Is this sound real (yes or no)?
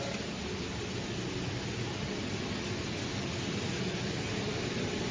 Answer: yes